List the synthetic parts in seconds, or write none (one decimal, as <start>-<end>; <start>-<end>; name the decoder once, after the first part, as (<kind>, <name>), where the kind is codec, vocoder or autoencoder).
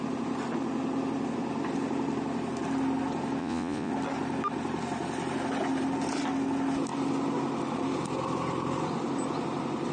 3.4-3.9 (vocoder, Vocos)